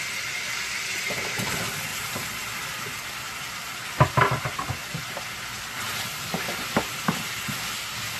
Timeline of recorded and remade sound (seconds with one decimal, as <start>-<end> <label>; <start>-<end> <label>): 0.0-1.9 recorded; 1.9-4.7 remade; 4.7-5.5 recorded; 5.5-6.8 remade; 6.8-8.2 recorded